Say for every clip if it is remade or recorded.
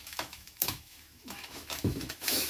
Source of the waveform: remade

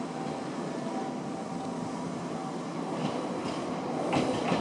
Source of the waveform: recorded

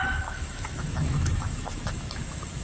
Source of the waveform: remade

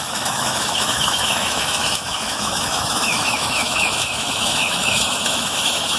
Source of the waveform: remade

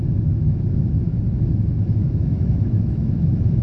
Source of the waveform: remade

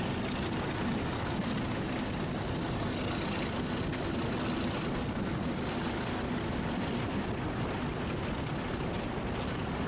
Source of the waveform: recorded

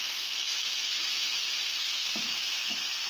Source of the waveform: remade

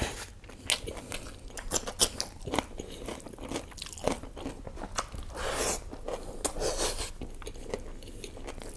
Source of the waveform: recorded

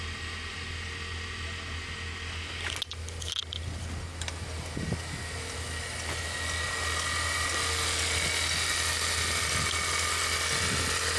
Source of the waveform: recorded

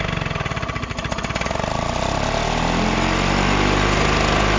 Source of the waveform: recorded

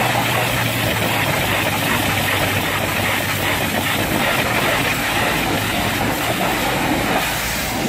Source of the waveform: recorded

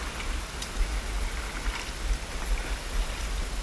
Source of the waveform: recorded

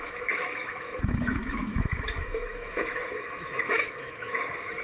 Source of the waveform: remade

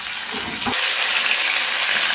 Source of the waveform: recorded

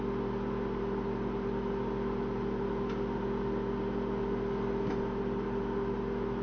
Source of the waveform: recorded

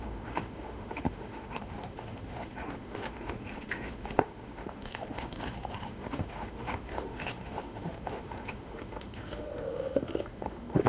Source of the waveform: remade